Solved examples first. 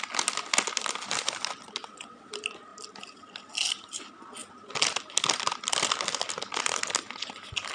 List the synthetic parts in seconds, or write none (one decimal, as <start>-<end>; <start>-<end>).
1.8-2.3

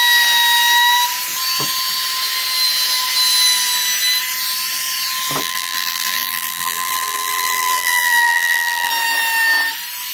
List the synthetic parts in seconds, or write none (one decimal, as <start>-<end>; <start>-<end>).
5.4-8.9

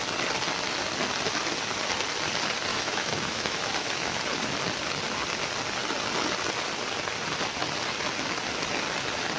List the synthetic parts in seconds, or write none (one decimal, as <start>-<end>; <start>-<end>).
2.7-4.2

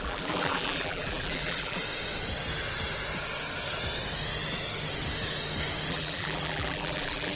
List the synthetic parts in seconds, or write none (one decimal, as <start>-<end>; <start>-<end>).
0.0-1.8; 5.9-7.4